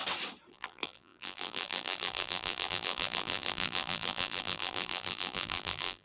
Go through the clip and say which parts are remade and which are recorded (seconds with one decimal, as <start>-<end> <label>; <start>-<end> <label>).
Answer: 0.0-0.5 recorded; 0.5-6.0 remade